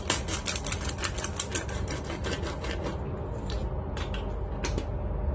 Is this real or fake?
real